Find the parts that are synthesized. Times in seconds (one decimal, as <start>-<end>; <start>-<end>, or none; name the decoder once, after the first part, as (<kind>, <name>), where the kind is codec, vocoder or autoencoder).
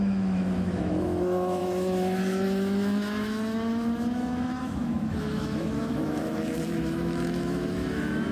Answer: 0.0-8.3 (autoencoder, DAC-VAE)